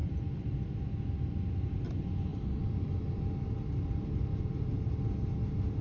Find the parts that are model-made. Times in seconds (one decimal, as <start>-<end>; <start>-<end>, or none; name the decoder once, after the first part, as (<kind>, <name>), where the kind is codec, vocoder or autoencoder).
0.0-0.9 (vocoder, BigVGAN v2); 2.3-4.8